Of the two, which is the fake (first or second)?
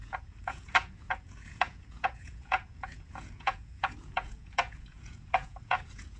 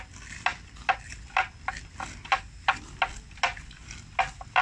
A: first